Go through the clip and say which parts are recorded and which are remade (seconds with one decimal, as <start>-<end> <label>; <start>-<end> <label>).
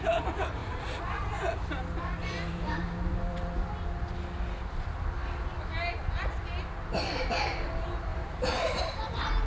0.0-2.2 recorded; 2.2-3.7 remade; 3.7-8.1 recorded; 8.1-8.8 remade; 8.8-9.5 recorded